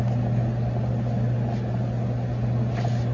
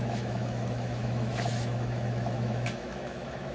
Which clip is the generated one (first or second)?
second